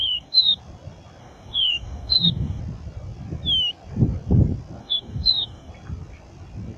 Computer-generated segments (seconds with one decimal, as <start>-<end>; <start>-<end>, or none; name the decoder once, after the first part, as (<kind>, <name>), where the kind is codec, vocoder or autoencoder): 0.0-0.6 (codec, DAC); 1.2-2.6; 4.8-5.7